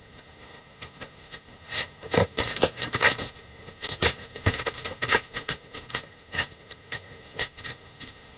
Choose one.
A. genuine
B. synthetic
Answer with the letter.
B